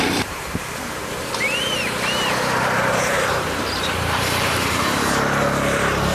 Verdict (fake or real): fake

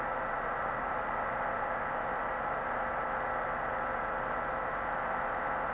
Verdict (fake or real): real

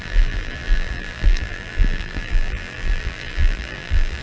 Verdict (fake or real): fake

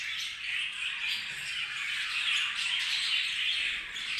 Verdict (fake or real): real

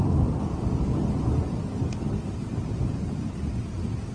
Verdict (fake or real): real